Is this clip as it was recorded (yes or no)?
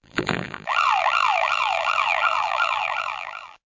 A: no